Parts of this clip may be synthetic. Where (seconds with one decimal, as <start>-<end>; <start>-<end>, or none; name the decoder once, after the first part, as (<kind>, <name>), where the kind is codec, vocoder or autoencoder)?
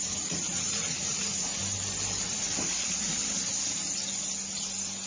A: 0.0-1.5 (vocoder, Vocos); 2.2-3.2